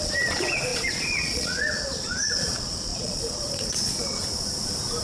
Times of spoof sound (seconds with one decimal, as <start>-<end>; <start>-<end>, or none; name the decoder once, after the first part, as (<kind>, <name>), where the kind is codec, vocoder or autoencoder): 0.0-4.2 (vocoder, Vocos)

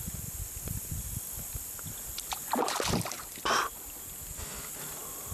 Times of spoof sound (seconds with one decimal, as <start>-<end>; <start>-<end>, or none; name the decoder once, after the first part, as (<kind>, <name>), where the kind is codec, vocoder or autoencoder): none

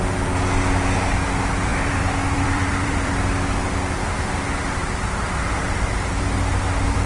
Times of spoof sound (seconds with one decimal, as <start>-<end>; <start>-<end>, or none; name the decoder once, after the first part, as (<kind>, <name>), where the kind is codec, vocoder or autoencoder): 1.7-3.1 (vocoder, BigVGAN v2); 4.8-5.4

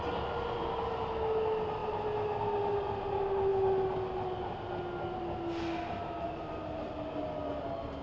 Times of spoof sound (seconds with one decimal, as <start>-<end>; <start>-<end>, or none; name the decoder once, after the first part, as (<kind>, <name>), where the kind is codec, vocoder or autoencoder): none

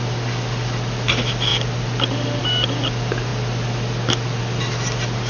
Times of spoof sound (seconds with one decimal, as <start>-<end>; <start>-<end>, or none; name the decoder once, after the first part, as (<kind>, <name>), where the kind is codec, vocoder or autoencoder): none